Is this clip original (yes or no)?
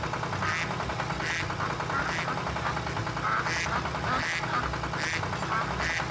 yes